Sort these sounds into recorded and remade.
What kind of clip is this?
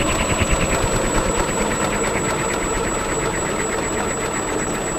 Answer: recorded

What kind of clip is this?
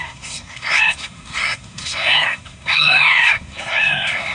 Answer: remade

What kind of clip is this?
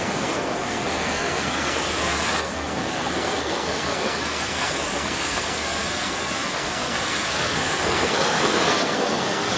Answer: remade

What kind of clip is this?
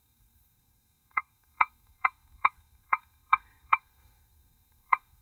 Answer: remade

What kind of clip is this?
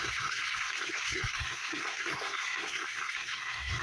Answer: remade